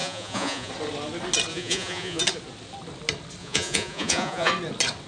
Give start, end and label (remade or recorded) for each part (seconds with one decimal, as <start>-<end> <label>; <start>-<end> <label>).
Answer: 0.0-0.7 remade; 0.7-1.5 recorded; 1.5-2.2 remade; 2.2-3.4 recorded; 3.4-4.5 remade; 4.5-5.1 recorded

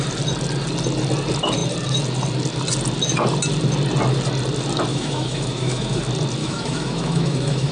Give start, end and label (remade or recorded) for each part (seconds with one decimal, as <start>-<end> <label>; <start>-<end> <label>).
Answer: 0.0-4.9 recorded; 4.9-6.0 remade; 6.0-6.4 recorded; 6.4-7.7 remade

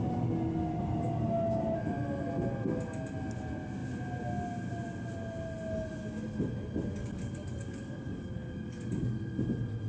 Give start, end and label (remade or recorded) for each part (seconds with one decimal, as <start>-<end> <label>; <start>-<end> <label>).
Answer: 0.0-7.0 recorded; 7.0-8.9 remade; 8.9-9.9 recorded

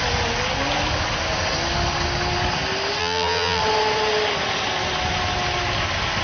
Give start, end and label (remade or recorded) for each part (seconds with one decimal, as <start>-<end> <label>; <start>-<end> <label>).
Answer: 0.0-3.0 recorded; 3.0-3.6 remade; 3.6-6.2 recorded

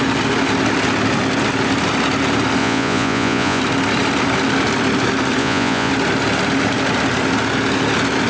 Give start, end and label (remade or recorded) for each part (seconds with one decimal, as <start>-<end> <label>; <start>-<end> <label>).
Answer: 0.0-2.6 recorded; 2.6-3.6 remade; 3.6-5.4 recorded; 5.4-5.9 remade; 5.9-8.3 recorded

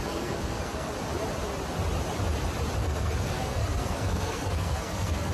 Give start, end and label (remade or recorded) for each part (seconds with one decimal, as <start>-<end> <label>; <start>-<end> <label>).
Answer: 0.0-0.9 remade; 0.9-2.8 recorded; 2.8-5.3 remade

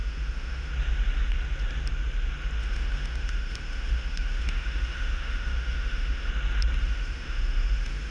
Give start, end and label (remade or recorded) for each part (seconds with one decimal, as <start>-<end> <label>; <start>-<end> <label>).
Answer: 0.0-0.7 remade; 0.7-2.6 recorded; 2.6-6.3 remade; 6.3-6.8 recorded; 6.8-8.1 remade

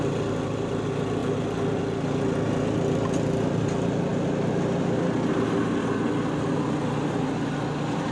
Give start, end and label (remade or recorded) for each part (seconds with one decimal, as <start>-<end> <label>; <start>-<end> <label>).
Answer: 0.0-8.1 recorded